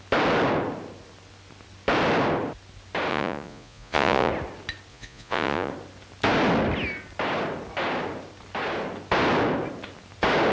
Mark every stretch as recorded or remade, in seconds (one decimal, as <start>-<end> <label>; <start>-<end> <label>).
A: 0.0-3.1 recorded; 3.1-4.3 remade; 4.3-4.9 recorded; 4.9-5.7 remade; 5.7-10.5 recorded